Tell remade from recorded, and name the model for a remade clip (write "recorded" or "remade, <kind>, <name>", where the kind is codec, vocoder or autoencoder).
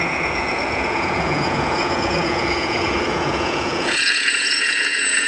remade, vocoder, Vocos